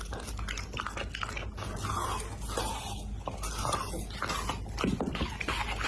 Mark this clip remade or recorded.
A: recorded